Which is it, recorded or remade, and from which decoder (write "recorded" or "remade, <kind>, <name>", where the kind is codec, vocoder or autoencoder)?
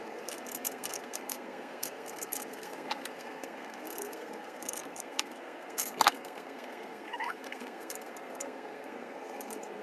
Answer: remade, codec, SNAC